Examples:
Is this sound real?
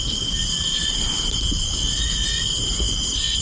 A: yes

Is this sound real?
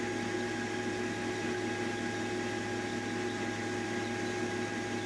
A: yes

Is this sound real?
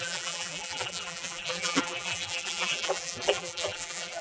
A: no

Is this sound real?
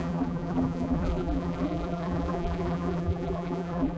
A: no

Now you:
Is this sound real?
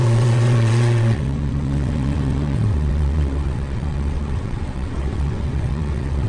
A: no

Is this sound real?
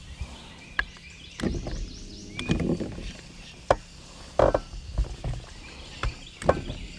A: yes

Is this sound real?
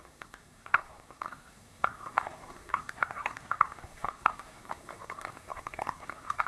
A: no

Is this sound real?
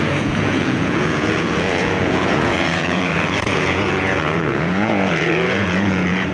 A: no